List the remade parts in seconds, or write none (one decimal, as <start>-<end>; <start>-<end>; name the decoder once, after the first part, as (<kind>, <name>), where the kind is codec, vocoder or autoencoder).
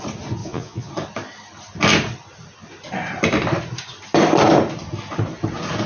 0.4-0.9 (vocoder, Vocos)